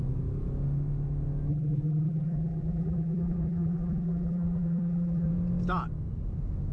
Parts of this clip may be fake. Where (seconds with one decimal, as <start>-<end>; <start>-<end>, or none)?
1.5-5.3